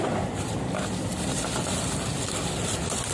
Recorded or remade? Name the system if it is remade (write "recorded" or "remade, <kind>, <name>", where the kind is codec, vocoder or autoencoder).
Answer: recorded